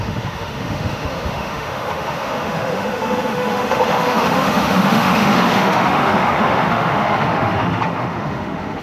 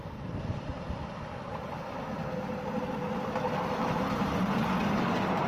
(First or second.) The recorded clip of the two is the second